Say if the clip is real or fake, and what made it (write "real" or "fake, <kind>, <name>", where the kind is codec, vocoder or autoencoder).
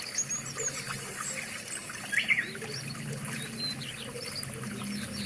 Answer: real